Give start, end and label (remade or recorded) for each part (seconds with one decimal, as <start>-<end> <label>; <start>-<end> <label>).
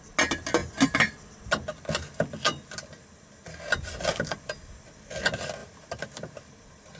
0.0-5.6 recorded; 5.6-6.5 remade; 6.5-7.0 recorded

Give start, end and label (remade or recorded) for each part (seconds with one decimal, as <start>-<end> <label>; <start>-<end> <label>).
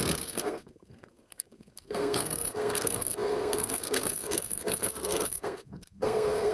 0.0-6.5 remade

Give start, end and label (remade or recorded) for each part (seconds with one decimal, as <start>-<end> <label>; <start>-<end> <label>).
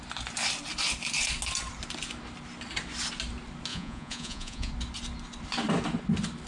0.0-3.7 recorded; 3.7-4.7 remade; 4.7-6.5 recorded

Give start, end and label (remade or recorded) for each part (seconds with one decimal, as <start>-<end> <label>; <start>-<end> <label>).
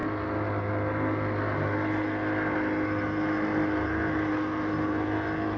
0.0-5.6 recorded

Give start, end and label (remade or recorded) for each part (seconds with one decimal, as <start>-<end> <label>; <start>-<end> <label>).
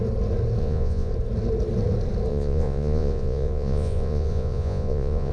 0.0-0.6 recorded; 0.6-1.1 remade; 1.1-2.3 recorded; 2.3-5.3 remade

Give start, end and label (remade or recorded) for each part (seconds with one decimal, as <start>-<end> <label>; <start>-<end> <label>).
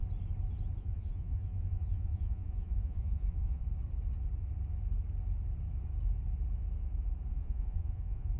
0.0-0.8 recorded; 0.8-3.6 remade; 3.6-7.3 recorded; 7.3-8.4 remade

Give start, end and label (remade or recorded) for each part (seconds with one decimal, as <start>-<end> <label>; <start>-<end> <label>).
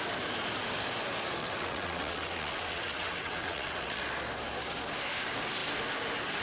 0.0-1.4 recorded; 1.4-4.1 remade; 4.1-6.4 recorded